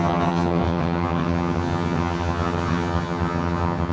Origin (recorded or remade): remade